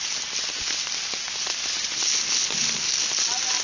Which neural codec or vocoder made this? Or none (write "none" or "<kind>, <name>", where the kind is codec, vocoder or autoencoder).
none